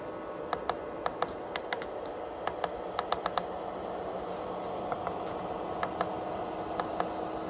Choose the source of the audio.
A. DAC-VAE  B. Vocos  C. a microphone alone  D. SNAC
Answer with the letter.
C